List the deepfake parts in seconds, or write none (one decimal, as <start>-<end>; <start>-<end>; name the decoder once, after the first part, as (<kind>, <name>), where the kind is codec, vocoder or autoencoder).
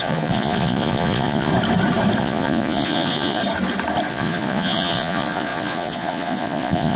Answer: 0.0-1.5 (vocoder, Vocos); 2.2-3.4; 4.1-7.0